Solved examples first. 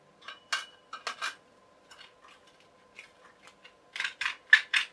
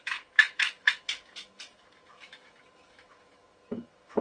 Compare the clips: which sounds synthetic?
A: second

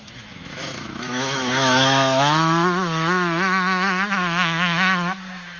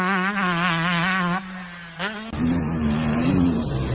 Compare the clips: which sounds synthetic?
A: first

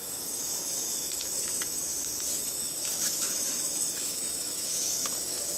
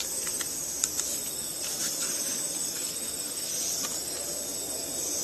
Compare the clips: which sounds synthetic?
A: first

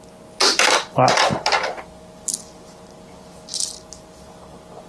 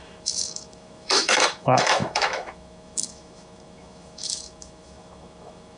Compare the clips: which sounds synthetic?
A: second